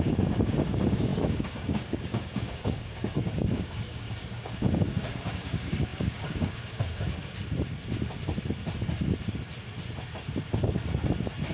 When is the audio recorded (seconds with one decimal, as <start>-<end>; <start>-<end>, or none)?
7.2-11.5